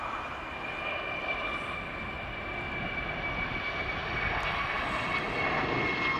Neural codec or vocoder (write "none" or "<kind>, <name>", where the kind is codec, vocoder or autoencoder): none